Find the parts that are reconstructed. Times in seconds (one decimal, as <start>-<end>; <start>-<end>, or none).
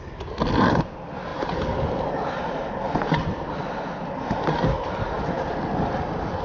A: none